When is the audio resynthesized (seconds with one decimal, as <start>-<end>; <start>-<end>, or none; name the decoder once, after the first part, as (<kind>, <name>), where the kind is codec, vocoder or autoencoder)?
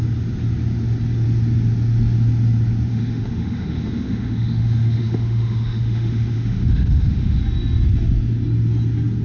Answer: 2.9-7.4 (autoencoder, DAC-VAE)